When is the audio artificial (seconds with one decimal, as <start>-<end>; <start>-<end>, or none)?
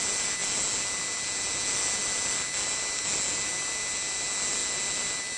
none